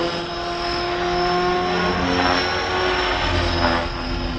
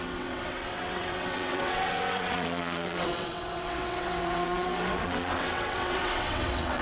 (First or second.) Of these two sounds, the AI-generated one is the second